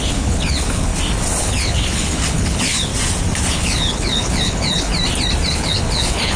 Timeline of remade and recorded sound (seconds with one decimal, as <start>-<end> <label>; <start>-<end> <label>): 0.0-0.9 remade; 0.9-1.4 recorded; 1.4-2.9 remade; 2.9-3.5 recorded; 3.5-4.9 remade; 4.9-5.5 recorded; 5.5-6.4 remade